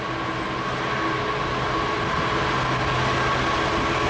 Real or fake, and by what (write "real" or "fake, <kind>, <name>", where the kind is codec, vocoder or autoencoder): real